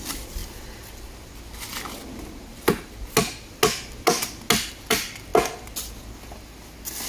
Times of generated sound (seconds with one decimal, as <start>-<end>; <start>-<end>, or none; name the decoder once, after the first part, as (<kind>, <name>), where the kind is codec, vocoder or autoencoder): 0.0-0.4 (vocoder, BigVGAN v2); 4.7-5.3